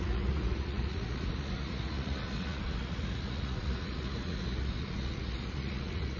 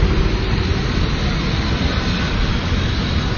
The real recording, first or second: second